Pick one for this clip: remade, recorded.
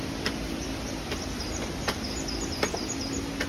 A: recorded